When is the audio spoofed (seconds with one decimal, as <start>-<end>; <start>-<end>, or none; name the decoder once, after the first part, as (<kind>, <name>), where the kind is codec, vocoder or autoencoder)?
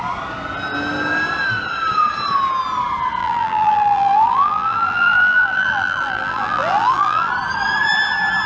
3.2-7.3 (vocoder, BigVGAN v2)